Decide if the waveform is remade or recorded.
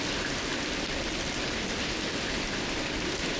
recorded